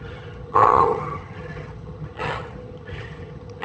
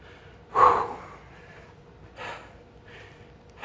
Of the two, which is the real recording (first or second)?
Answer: second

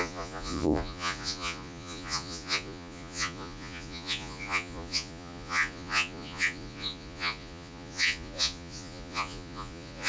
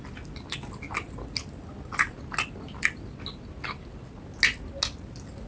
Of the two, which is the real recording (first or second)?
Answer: second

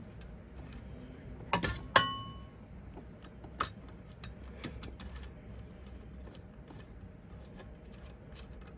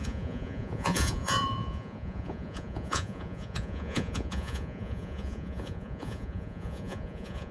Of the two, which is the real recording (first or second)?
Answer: first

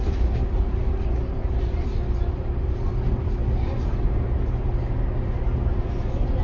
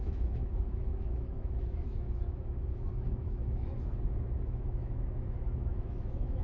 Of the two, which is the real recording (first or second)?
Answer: first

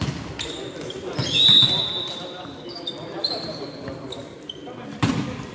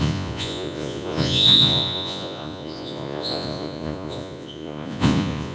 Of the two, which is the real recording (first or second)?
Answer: first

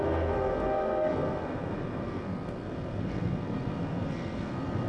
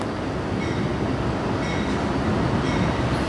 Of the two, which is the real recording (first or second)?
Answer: second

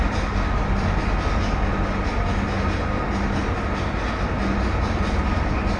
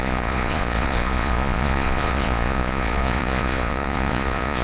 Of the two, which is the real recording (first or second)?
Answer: first